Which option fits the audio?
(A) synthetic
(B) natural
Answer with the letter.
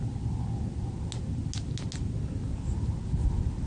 B